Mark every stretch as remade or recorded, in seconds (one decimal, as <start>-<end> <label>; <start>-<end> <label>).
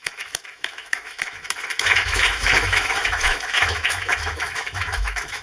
0.0-5.4 remade